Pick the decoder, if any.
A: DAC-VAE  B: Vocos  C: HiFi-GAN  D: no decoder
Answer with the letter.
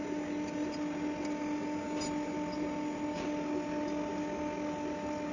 D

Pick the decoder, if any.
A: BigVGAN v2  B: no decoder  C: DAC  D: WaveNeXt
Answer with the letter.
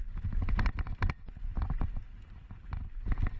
B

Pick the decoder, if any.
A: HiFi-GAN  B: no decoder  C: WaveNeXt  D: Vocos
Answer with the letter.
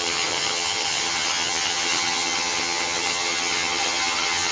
A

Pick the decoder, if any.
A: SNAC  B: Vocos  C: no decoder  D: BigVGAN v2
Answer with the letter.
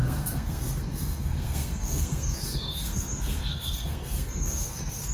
A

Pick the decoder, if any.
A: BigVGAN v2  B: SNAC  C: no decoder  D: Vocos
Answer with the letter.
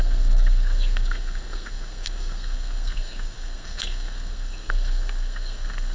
B